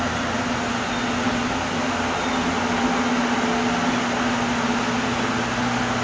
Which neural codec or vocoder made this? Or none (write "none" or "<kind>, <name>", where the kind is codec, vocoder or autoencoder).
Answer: none